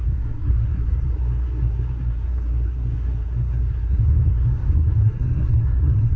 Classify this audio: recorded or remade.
remade